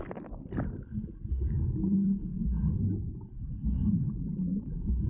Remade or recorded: recorded